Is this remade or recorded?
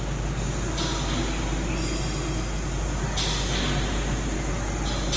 recorded